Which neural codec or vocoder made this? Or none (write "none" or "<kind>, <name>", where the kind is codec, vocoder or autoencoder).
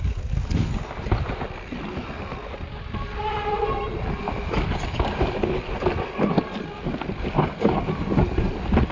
none